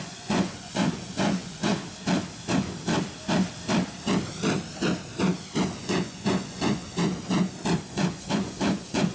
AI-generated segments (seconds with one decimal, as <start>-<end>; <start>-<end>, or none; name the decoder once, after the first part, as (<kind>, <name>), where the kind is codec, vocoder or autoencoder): 0.0-1.7 (vocoder, Vocos); 5.8-6.8; 7.8-9.1